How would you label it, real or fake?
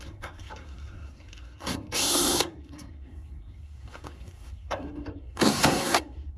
fake